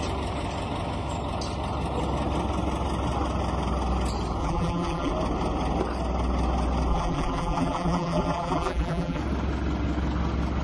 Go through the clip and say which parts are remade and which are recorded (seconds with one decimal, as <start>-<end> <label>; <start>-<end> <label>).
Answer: 0.0-4.4 recorded; 4.4-5.1 remade; 5.1-6.9 recorded; 6.9-9.2 remade; 9.2-10.6 recorded